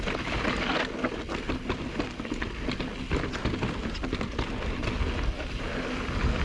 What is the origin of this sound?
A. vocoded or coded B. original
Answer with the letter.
B